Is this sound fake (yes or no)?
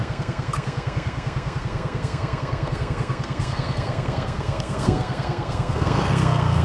yes